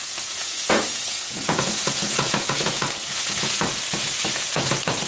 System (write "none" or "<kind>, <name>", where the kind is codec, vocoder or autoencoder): vocoder, Vocos